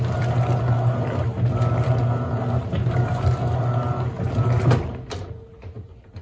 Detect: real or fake real